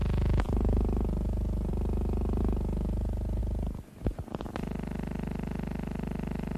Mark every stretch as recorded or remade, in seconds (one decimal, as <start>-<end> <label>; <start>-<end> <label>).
0.0-1.7 recorded; 1.7-2.4 remade; 2.4-6.6 recorded